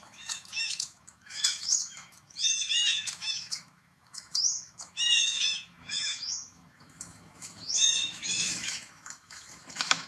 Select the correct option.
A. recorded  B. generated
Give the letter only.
B